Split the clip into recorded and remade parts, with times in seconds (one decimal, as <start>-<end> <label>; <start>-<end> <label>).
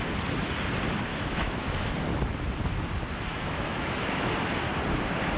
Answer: 0.0-1.1 recorded; 1.1-1.9 remade; 1.9-3.3 recorded; 3.3-4.3 remade; 4.3-5.4 recorded